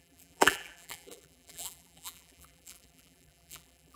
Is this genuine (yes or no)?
no